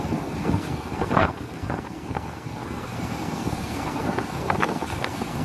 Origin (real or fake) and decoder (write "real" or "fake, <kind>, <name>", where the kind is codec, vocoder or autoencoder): fake, codec, SNAC